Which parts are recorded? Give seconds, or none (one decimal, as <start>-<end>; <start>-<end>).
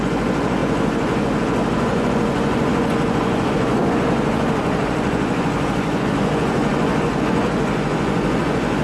none